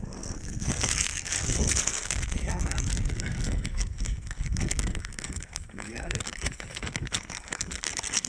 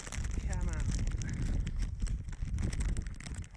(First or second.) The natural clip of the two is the second